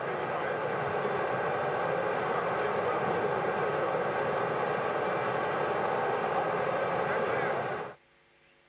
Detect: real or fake real